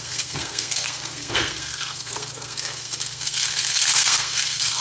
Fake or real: fake